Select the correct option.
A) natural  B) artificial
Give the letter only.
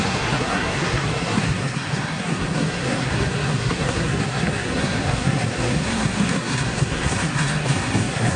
B